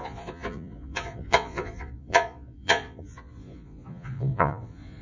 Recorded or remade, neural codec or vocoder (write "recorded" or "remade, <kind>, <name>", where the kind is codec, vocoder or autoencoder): remade, vocoder, Vocos